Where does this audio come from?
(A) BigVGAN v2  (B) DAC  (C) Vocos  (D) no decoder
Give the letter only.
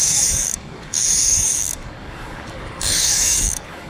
B